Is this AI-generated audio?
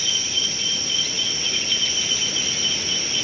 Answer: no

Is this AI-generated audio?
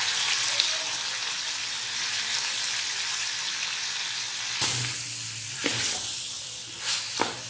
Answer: no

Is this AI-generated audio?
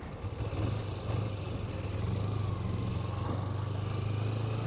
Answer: no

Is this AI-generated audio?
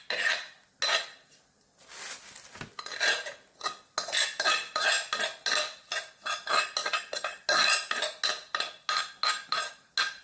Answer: no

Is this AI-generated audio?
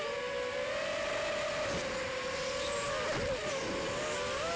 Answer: no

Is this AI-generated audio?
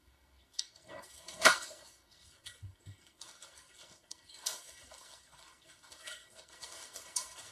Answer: yes